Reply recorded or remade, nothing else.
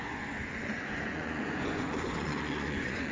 remade